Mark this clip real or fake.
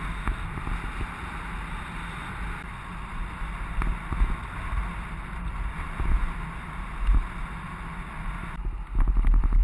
real